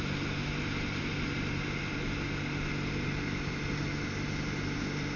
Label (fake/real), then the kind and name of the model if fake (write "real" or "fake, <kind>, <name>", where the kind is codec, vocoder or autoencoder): real